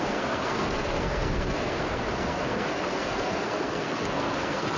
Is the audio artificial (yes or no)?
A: yes